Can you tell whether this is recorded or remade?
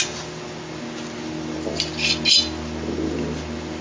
recorded